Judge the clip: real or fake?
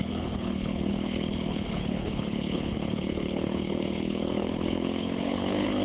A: fake